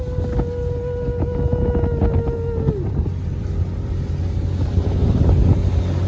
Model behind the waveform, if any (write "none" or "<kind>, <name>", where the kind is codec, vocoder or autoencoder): none